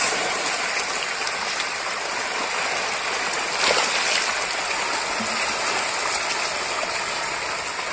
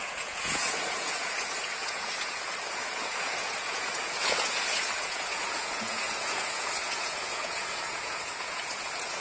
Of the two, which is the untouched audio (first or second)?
first